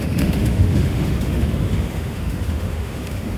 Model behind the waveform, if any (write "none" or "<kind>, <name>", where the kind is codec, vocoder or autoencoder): autoencoder, DAC-VAE